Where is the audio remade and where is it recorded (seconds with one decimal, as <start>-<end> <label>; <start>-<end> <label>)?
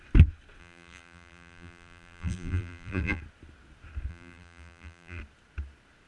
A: 0.0-0.6 recorded; 0.6-3.2 remade; 3.2-4.1 recorded; 4.1-5.2 remade; 5.2-6.1 recorded